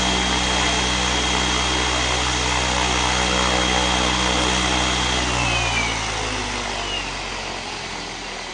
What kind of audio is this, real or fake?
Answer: real